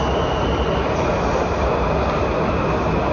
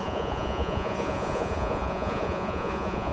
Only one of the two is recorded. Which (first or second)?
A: first